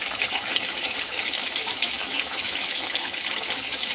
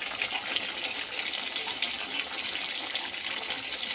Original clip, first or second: second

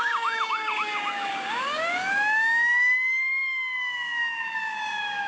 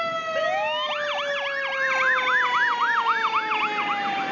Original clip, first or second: second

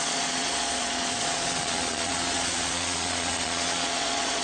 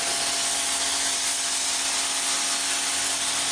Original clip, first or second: second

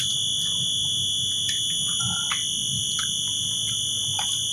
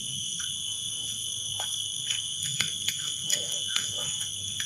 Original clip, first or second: first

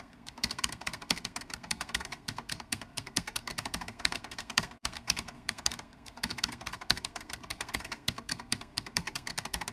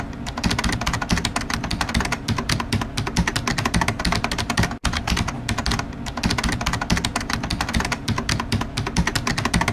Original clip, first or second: second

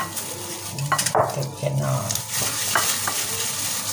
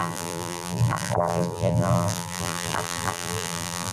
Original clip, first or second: first